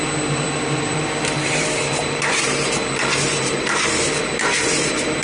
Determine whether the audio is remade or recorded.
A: remade